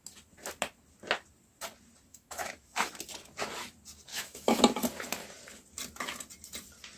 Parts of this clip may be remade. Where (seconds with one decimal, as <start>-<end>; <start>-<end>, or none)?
2.1-2.9; 4.1-4.6